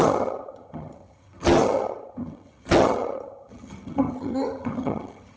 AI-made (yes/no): yes